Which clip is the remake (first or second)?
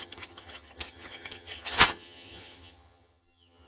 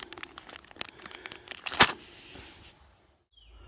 first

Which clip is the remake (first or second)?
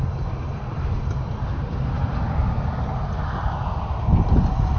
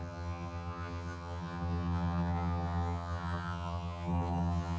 second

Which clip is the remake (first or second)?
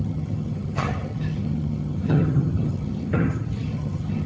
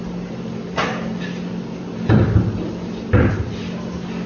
first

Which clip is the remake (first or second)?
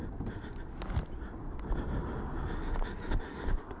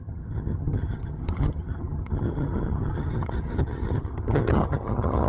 second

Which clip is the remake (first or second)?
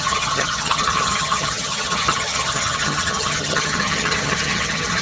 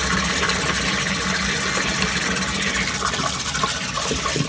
first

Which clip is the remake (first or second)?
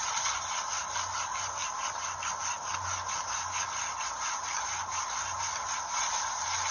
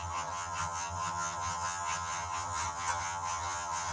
second